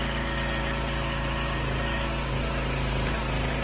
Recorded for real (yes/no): yes